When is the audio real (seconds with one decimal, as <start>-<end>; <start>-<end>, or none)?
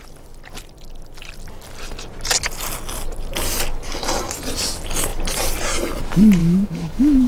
0.0-6.4